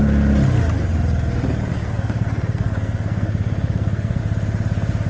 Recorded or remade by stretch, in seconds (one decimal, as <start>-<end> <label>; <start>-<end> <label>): 0.0-1.7 recorded; 1.7-4.2 remade; 4.2-5.1 recorded